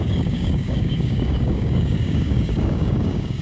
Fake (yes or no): yes